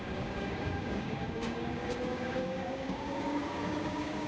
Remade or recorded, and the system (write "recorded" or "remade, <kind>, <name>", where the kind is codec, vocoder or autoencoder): remade, codec, DAC